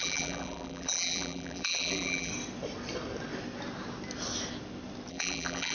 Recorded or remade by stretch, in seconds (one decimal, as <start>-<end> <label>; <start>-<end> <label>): 0.0-2.3 remade; 2.3-5.1 recorded; 5.1-5.7 remade